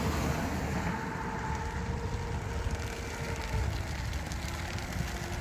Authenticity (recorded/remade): recorded